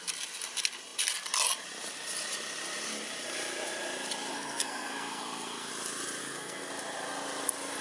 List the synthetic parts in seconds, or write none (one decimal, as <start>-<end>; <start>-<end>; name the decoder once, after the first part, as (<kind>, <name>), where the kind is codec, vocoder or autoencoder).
4.3-5.7 (codec, SNAC); 6.2-6.7